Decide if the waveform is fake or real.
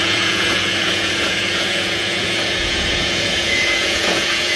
fake